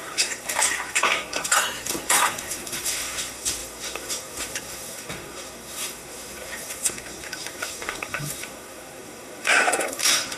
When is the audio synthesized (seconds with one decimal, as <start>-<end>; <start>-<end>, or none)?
0.0-10.4